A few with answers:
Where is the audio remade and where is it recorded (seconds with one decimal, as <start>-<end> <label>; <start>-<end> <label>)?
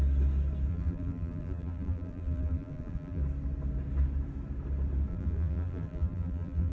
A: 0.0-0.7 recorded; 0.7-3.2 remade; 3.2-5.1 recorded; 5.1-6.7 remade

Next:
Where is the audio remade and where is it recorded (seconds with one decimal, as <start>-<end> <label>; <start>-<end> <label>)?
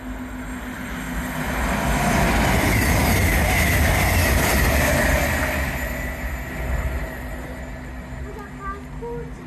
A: 0.0-9.5 recorded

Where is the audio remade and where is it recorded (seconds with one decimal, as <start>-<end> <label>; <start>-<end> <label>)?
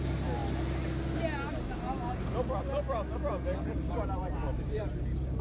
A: 0.0-0.4 remade; 0.4-3.6 recorded; 3.6-5.4 remade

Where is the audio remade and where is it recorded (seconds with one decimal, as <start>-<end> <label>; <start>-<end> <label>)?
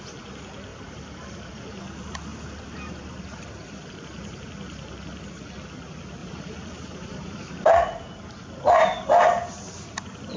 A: 0.0-0.7 recorded; 0.7-1.5 remade; 1.5-2.3 recorded; 2.3-3.5 remade; 3.5-6.2 recorded; 6.2-7.7 remade; 7.7-10.4 recorded